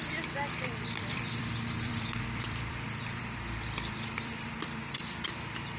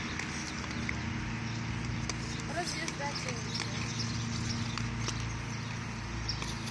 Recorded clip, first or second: second